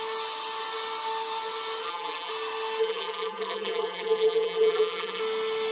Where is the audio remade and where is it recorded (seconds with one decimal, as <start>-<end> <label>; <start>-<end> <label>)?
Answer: 0.0-1.8 recorded; 1.8-2.3 remade; 2.3-2.8 recorded; 2.8-5.2 remade; 5.2-5.7 recorded